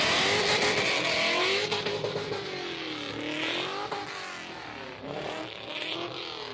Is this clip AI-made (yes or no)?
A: no